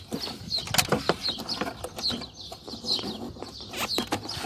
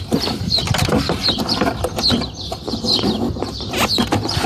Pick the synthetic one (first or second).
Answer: second